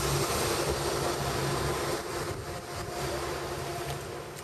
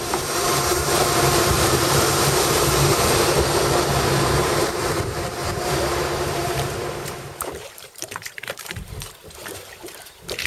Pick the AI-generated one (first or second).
second